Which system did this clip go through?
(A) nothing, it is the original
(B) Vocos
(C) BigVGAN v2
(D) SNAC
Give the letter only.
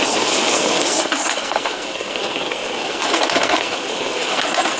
D